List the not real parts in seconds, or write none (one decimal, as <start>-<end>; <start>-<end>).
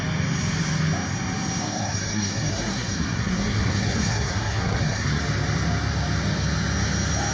1.6-5.2